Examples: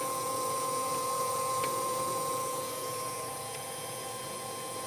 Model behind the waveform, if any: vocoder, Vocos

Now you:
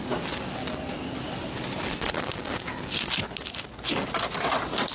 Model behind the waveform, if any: none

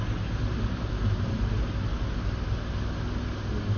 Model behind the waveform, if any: none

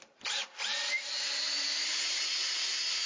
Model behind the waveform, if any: none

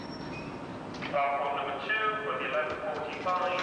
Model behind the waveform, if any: none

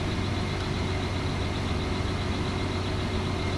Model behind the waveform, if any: none